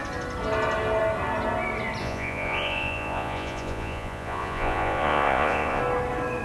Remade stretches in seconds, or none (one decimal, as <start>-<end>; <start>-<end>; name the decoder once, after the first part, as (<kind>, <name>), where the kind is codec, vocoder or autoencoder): 2.0-5.8 (vocoder, Vocos)